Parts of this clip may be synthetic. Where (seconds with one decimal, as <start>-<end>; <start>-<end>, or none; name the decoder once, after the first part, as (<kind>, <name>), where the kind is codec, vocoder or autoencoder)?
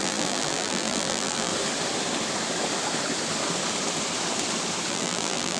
0.0-1.5 (vocoder, BigVGAN v2); 4.9-5.6